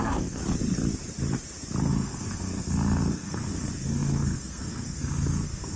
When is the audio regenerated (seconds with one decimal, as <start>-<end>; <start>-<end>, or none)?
0.0-0.4; 1.8-5.8